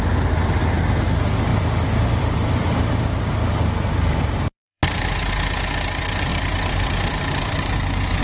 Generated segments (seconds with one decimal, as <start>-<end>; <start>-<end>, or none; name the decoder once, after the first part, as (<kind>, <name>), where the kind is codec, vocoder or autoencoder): 1.5-5.1 (vocoder, BigVGAN v2); 6.3-8.2